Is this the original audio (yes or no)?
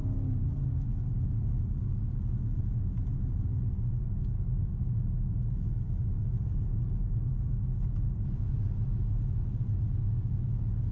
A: yes